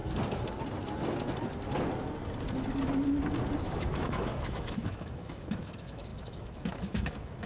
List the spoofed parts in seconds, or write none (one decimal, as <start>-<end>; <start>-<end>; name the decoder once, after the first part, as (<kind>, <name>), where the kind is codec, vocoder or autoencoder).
3.6-7.5 (autoencoder, DAC-VAE)